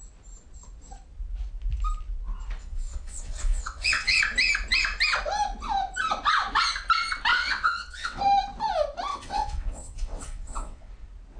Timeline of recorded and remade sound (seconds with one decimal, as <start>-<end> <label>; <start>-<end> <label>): 0.0-2.6 recorded; 2.6-4.2 remade; 4.2-7.3 recorded; 7.3-8.2 remade; 8.2-9.1 recorded; 9.1-10.9 remade; 10.9-11.4 recorded